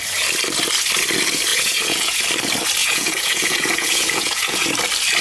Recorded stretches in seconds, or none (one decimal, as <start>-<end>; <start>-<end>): 0.0-1.5; 2.2-2.8; 4.7-5.2